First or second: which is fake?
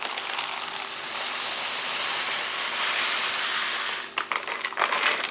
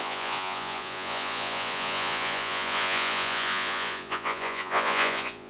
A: second